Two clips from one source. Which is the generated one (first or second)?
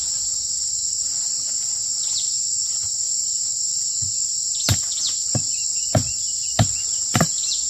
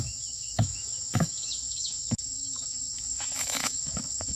second